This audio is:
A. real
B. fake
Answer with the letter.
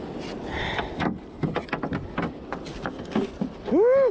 A